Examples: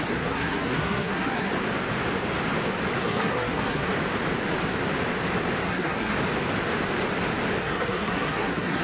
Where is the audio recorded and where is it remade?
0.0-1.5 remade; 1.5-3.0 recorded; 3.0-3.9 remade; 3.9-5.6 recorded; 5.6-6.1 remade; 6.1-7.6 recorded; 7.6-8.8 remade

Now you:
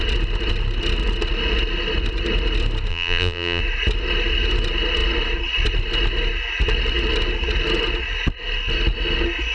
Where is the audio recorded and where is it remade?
0.0-2.9 recorded; 2.9-3.6 remade; 3.6-9.5 recorded

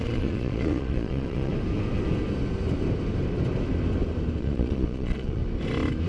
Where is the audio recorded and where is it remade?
0.0-1.5 remade; 1.5-4.4 recorded; 4.4-5.4 remade; 5.4-6.1 recorded

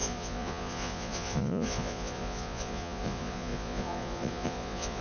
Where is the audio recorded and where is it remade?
0.0-5.0 remade

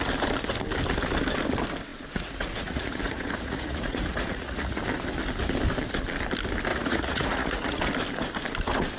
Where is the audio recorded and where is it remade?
0.0-1.9 recorded; 1.9-4.8 remade; 4.8-6.7 recorded; 6.7-7.8 remade; 7.8-9.0 recorded

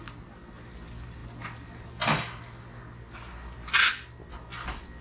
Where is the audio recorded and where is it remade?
0.0-5.0 recorded